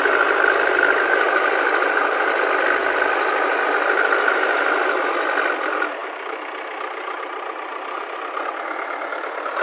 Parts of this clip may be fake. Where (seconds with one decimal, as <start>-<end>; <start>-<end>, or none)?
none